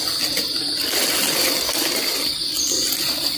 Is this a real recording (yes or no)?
no